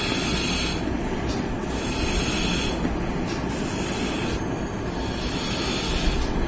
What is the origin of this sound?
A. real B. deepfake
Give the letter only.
A